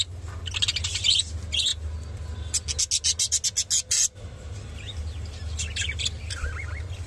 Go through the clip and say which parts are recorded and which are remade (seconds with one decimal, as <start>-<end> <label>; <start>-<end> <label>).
0.0-7.1 recorded